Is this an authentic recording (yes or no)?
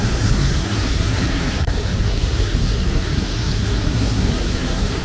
no